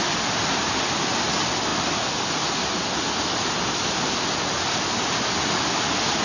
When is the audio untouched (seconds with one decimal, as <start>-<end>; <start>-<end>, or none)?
0.0-6.2